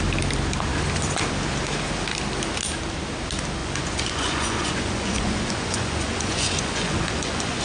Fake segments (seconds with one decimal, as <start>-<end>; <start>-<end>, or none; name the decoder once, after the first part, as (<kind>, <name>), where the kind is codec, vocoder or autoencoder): 3.6-7.6 (vocoder, Vocos)